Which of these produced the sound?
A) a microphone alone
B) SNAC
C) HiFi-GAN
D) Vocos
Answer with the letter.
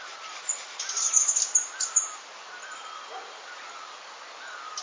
A